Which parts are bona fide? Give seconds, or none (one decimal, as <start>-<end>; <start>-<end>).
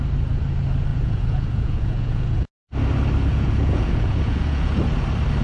0.0-0.9; 2.5-3.3; 4.8-5.4